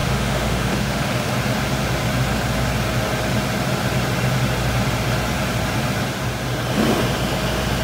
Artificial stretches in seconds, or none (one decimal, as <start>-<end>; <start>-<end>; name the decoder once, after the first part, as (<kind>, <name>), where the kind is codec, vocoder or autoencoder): 0.0-1.3 (autoencoder, DAC-VAE)